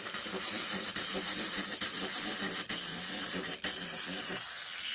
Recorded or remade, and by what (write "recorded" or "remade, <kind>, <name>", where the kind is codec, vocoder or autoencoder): remade, vocoder, BigVGAN v2